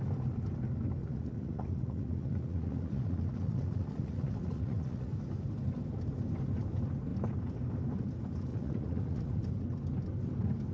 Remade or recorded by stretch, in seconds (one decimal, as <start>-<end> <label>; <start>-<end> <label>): 0.0-1.0 recorded; 1.0-5.1 remade; 5.1-8.5 recorded; 8.5-9.4 remade; 9.4-10.7 recorded